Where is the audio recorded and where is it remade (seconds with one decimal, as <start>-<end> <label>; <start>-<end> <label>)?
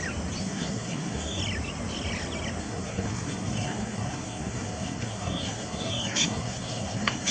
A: 0.0-0.4 recorded; 0.4-1.4 remade; 1.4-2.6 recorded; 2.6-7.3 remade